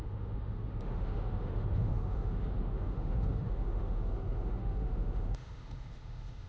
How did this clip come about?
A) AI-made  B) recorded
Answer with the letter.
A